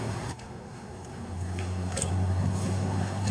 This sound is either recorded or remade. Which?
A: remade